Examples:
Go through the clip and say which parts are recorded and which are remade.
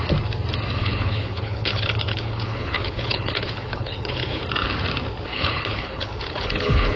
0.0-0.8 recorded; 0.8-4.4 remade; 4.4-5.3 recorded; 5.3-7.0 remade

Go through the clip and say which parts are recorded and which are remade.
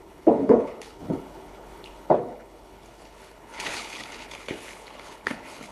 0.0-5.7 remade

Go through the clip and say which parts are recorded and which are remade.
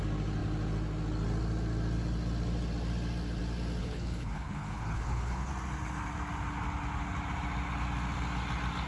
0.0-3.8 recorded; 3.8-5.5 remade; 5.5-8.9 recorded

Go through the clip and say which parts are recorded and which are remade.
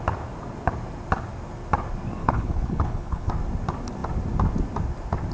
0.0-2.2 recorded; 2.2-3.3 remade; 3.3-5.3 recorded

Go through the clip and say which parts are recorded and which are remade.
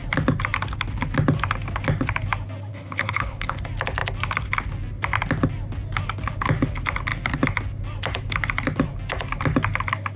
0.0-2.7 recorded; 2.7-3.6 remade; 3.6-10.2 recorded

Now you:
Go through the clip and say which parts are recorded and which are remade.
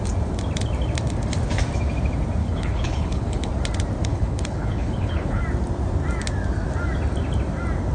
0.0-2.4 recorded; 2.4-3.5 remade; 3.5-4.0 recorded; 4.0-5.4 remade; 5.4-7.9 recorded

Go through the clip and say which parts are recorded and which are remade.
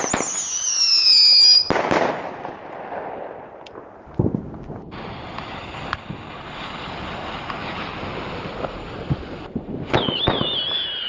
0.0-11.1 recorded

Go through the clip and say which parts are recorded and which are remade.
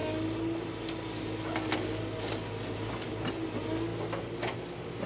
0.0-5.1 recorded